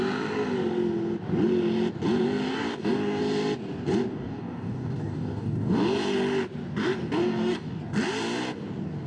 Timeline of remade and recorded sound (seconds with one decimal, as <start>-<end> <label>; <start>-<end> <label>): 0.0-2.5 recorded; 2.5-3.2 remade; 3.2-4.1 recorded; 4.1-5.7 remade; 5.7-7.2 recorded; 7.2-7.8 remade; 7.8-9.1 recorded